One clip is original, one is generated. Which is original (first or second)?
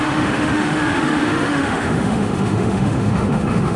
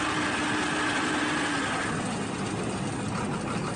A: second